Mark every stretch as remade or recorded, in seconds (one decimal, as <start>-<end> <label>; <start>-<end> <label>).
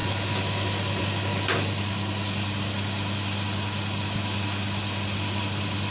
0.0-5.9 recorded